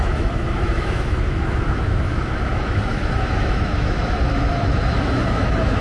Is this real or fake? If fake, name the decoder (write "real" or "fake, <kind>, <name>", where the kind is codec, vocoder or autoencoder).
fake, autoencoder, DAC-VAE